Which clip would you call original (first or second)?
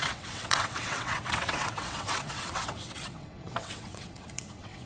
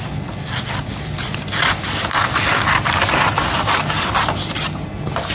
second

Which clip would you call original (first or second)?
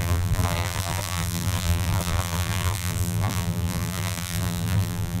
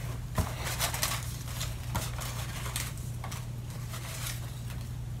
second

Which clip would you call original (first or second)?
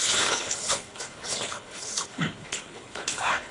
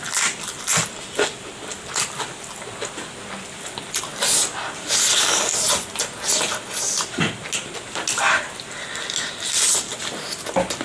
second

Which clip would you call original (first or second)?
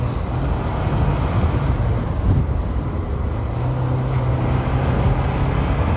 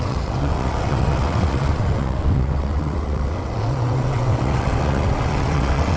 first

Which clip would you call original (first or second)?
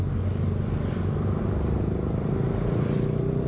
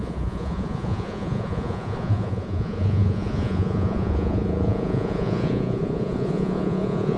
first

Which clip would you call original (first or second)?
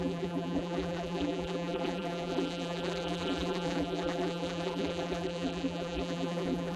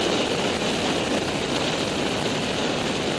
second